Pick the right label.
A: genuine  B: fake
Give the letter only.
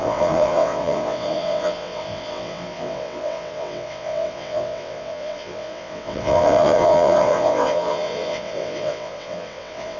B